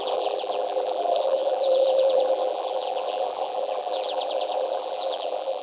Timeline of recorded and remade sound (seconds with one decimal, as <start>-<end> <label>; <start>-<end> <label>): 0.0-5.6 remade